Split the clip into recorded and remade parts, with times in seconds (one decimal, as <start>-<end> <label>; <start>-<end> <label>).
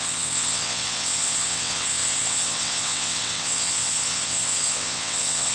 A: 0.0-5.5 remade